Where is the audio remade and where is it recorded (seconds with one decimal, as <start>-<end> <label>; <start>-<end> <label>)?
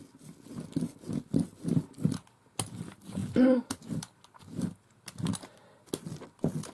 0.0-6.7 recorded